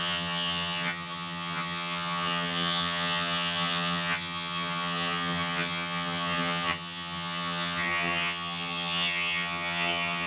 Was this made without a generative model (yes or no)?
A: no